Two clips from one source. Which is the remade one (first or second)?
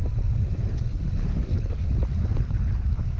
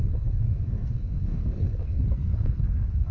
second